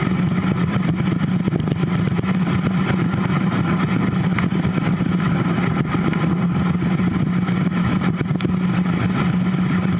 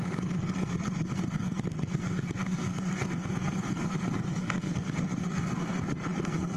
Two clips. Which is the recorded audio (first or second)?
first